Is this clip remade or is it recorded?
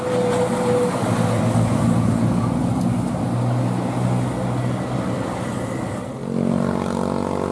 recorded